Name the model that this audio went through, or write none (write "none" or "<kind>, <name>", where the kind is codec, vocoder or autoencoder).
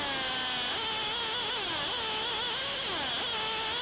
none